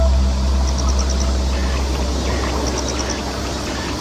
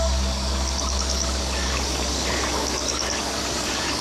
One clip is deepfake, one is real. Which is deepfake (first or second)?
second